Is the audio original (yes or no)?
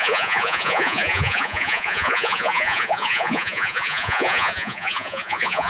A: no